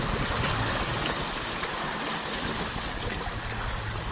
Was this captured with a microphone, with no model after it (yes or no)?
yes